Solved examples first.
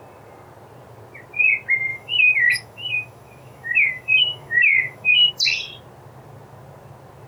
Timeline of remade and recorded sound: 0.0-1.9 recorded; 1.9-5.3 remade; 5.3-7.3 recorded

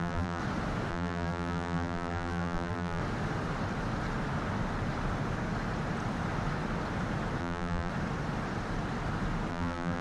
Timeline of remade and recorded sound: 0.0-0.4 remade; 0.4-0.9 recorded; 0.9-3.0 remade; 3.0-7.4 recorded; 7.4-7.9 remade; 7.9-9.5 recorded; 9.5-10.0 remade

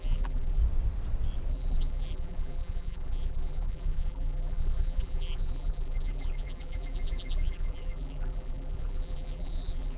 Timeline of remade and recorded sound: 0.0-0.6 remade; 0.6-1.5 recorded; 1.5-10.0 remade

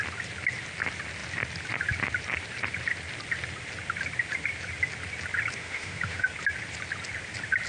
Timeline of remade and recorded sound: 0.0-5.6 recorded; 5.6-6.3 remade; 6.3-7.7 recorded

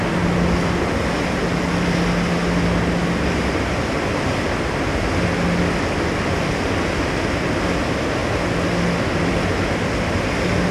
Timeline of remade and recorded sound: 0.0-10.7 recorded

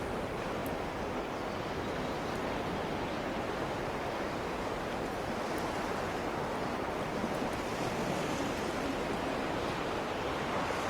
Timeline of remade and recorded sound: 0.0-10.9 recorded

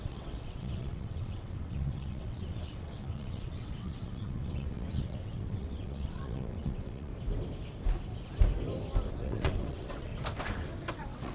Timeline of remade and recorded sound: 0.0-7.1 remade; 7.1-9.1 recorded; 9.1-10.1 remade; 10.1-10.9 recorded; 10.9-11.3 remade